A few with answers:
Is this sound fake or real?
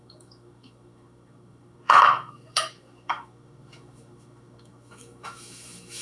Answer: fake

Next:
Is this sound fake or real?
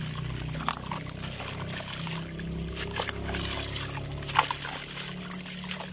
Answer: real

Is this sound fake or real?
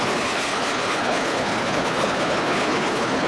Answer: fake